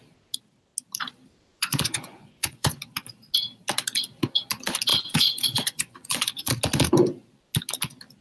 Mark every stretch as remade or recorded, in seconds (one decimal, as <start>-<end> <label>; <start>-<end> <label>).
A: 0.0-1.5 recorded; 1.5-2.8 remade; 2.8-4.9 recorded; 4.9-6.5 remade; 6.5-8.2 recorded